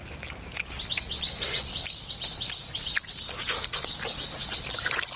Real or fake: real